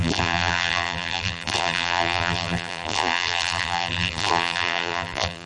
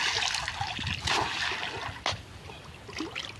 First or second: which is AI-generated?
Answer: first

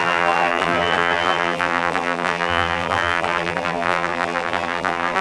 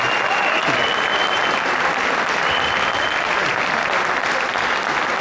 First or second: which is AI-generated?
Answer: first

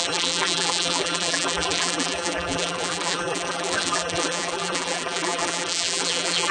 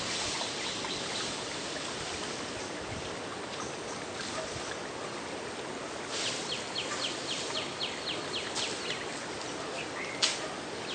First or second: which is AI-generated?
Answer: first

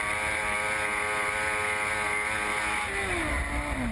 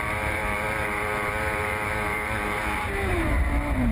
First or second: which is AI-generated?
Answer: second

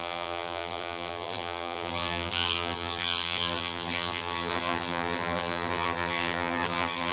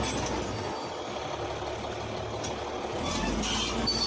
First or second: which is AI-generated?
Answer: first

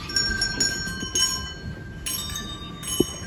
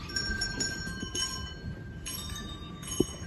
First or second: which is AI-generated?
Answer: second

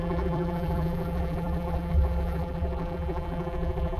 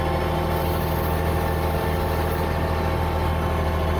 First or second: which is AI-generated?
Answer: first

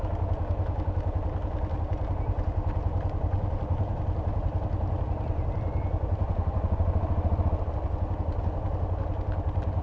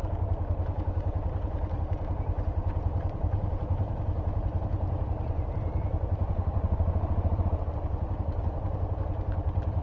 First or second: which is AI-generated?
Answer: second